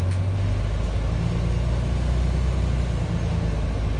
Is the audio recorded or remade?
recorded